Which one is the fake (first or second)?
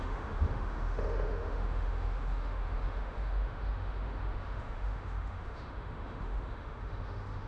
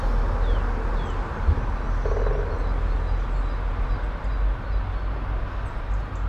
first